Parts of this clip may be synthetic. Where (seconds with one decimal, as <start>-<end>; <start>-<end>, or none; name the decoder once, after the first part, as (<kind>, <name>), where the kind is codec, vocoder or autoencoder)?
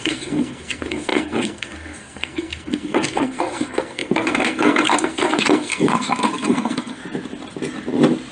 0.0-7.0 (codec, SNAC)